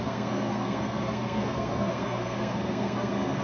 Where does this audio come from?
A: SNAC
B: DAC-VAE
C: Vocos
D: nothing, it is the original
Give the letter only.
A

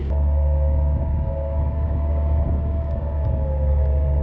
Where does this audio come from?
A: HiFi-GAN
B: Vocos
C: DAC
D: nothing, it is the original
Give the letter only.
C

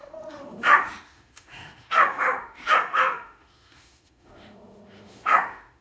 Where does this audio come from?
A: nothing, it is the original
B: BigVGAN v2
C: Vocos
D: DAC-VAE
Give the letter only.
D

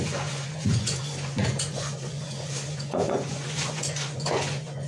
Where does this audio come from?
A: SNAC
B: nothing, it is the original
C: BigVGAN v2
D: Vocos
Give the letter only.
D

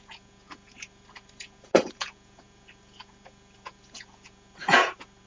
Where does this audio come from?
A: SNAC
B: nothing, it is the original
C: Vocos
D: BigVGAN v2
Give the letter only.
C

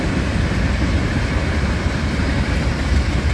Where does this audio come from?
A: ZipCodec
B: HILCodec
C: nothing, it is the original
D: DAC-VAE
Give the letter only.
C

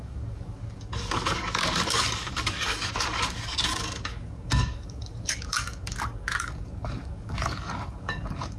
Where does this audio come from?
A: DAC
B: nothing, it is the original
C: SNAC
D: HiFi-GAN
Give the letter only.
A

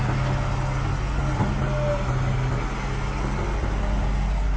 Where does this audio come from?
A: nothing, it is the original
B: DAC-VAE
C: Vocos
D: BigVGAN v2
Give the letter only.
A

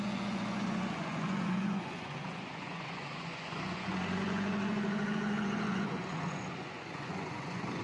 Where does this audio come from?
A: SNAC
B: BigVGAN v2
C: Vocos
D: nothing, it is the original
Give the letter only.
C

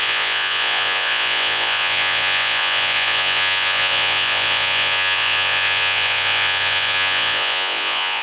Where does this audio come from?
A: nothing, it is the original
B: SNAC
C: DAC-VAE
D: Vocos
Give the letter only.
D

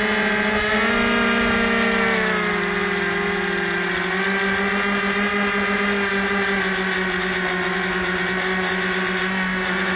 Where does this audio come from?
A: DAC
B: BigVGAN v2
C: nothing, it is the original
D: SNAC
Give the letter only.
C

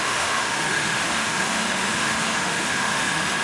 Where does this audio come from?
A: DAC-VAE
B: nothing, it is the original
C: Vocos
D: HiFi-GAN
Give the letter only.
A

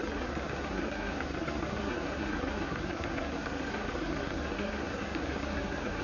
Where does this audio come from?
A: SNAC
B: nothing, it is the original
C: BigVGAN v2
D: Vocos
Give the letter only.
A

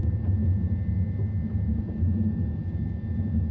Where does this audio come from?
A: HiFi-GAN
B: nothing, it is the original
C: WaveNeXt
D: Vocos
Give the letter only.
B